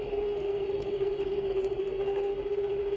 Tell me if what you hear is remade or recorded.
remade